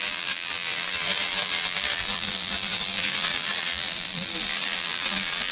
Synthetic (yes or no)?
yes